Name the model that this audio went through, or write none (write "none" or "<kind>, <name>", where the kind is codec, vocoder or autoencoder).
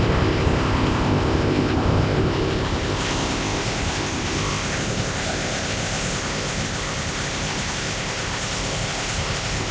codec, ZipCodec